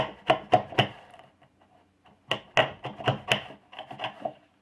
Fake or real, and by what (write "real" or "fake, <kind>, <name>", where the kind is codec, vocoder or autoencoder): real